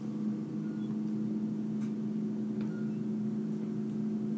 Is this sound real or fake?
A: real